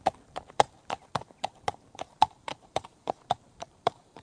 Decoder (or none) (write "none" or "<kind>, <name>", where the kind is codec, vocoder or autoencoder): vocoder, BigVGAN v2